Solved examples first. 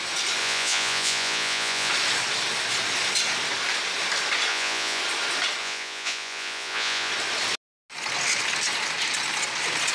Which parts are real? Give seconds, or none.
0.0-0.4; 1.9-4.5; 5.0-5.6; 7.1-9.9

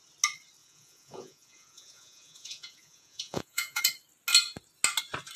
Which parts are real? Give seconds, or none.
0.0-0.6; 3.8-5.4